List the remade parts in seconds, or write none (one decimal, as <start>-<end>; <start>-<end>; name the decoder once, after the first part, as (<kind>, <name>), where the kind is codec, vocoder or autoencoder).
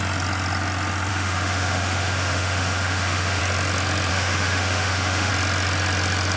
1.1-3.4 (autoencoder, DAC-VAE); 4.1-5.3